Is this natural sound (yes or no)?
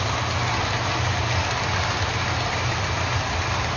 yes